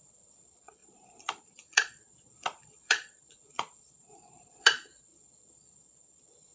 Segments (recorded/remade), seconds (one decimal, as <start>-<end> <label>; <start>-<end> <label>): 0.0-6.5 remade